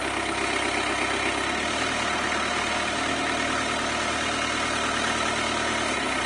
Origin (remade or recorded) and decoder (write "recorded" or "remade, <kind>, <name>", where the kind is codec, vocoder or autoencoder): recorded